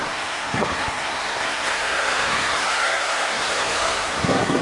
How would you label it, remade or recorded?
remade